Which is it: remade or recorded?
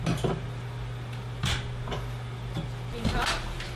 recorded